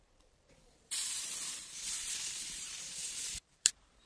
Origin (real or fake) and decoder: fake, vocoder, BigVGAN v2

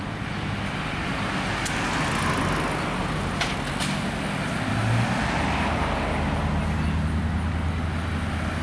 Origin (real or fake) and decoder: real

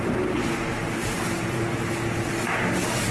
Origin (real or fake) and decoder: real